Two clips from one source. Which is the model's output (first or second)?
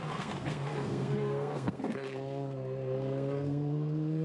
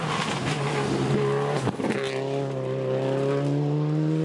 first